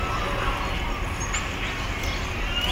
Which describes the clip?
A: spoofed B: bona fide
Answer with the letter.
B